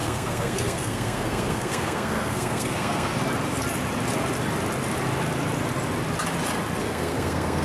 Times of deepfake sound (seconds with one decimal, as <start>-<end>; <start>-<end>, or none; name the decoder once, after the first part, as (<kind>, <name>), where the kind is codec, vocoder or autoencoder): 0.0-3.1 (codec, SNAC); 6.8-7.6